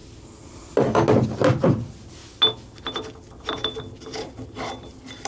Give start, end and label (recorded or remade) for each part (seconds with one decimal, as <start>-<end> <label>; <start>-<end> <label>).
0.0-5.3 recorded